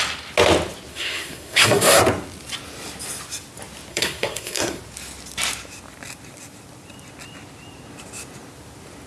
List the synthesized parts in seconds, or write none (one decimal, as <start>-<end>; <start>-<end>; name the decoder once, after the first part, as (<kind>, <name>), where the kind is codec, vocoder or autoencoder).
0.9-2.0 (codec, SNAC); 3.9-4.8